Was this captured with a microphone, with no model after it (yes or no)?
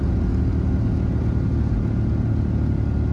yes